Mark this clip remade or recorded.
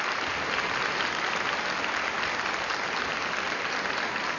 recorded